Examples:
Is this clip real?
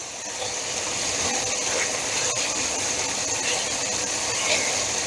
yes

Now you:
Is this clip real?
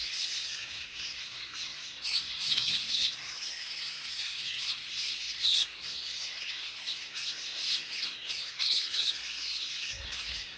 no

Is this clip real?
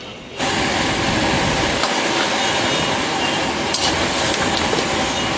yes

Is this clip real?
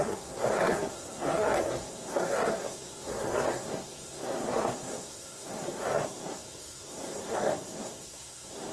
no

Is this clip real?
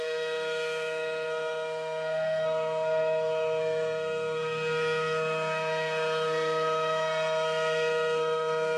no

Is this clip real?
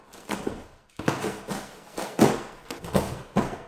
no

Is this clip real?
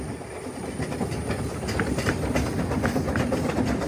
yes